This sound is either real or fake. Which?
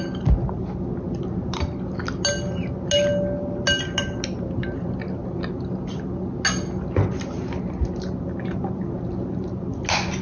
real